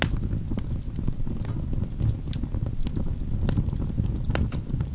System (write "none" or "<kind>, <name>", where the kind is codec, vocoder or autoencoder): none